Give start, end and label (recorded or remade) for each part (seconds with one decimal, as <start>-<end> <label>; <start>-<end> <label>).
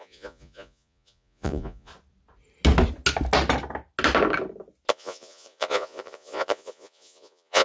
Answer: 0.0-1.9 remade; 1.9-4.9 recorded; 4.9-7.6 remade